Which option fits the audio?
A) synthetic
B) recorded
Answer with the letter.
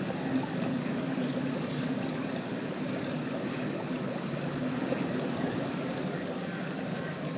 A